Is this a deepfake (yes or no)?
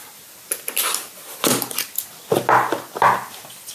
no